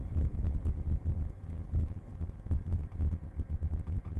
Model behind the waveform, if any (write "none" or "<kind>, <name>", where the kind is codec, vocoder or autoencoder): autoencoder, DAC-VAE